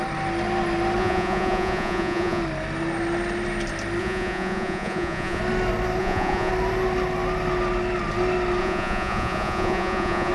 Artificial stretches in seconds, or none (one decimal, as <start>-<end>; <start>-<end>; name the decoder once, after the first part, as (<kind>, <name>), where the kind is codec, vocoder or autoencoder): 1.0-2.4 (vocoder, Vocos); 4.0-5.4; 6.0-6.5; 8.6-10.3